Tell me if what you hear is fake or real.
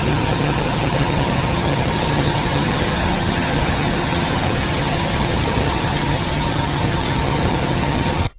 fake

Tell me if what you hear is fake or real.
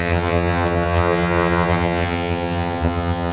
fake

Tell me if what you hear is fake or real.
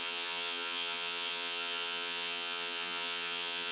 fake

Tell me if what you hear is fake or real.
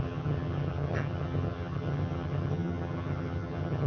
fake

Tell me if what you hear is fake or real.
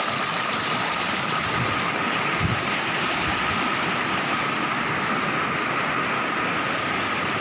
real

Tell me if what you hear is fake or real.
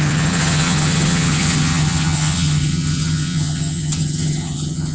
fake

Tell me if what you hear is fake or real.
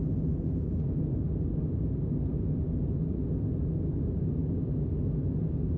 real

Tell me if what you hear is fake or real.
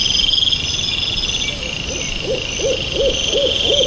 real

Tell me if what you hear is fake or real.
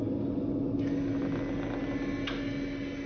real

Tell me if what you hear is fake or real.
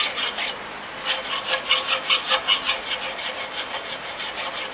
real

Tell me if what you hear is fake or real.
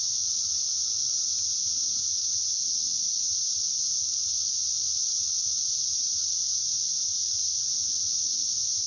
real